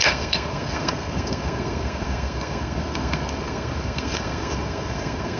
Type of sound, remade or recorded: remade